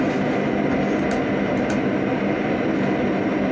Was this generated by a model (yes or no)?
no